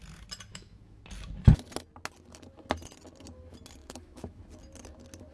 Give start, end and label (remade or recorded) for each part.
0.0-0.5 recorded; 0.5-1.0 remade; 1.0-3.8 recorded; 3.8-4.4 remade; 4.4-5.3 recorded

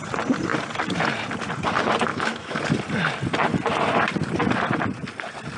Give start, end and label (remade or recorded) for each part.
0.0-2.1 recorded; 2.1-2.6 remade; 2.6-5.6 recorded

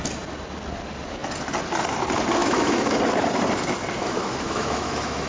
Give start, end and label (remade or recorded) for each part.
0.0-2.4 recorded; 2.4-3.0 remade; 3.0-4.0 recorded; 4.0-5.3 remade

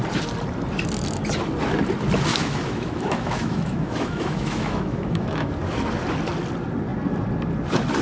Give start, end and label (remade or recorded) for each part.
0.0-2.3 recorded; 2.3-5.5 remade; 5.5-8.0 recorded

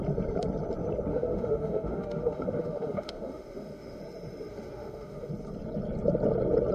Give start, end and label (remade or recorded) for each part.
0.0-1.1 recorded; 1.1-4.0 remade; 4.0-4.5 recorded; 4.5-5.3 remade; 5.3-6.7 recorded

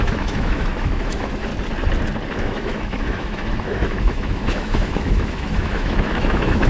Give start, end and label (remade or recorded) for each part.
0.0-1.5 remade; 1.5-2.3 recorded; 2.3-6.7 remade

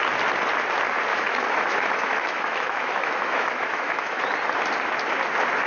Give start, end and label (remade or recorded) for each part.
0.0-1.1 recorded; 1.1-4.2 remade; 4.2-5.7 recorded